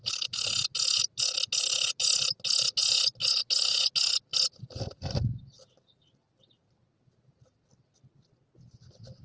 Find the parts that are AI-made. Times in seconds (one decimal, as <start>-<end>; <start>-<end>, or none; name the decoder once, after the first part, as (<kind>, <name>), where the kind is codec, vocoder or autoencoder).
none